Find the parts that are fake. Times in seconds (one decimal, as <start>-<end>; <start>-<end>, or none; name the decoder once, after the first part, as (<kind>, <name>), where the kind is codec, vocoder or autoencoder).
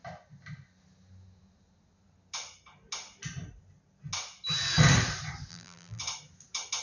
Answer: 5.5-6.0 (vocoder, BigVGAN v2)